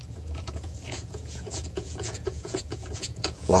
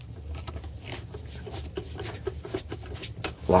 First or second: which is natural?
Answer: second